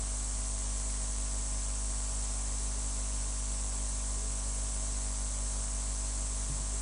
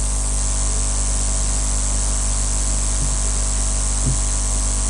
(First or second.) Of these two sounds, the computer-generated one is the first